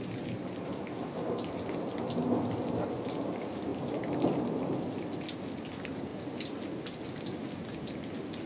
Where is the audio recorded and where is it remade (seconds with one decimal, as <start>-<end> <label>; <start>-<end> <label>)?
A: 0.0-8.5 recorded